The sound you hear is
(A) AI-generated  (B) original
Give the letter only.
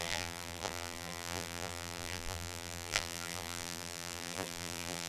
A